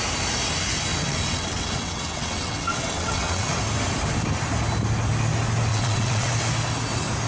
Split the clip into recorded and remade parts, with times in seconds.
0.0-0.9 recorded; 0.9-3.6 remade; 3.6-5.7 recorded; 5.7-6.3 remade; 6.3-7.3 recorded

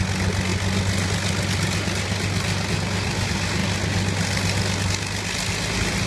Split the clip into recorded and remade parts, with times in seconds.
0.0-6.1 recorded

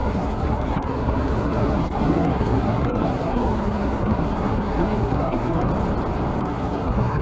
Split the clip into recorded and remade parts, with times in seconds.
0.0-5.7 remade; 5.7-6.4 recorded; 6.4-7.2 remade

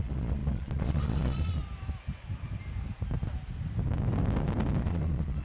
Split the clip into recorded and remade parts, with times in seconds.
0.0-1.6 remade; 1.6-4.8 recorded; 4.8-5.4 remade

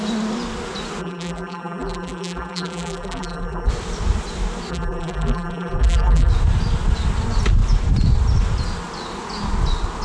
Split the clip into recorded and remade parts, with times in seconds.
0.0-1.0 recorded; 1.0-3.7 remade; 3.7-4.7 recorded; 4.7-6.3 remade; 6.3-10.0 recorded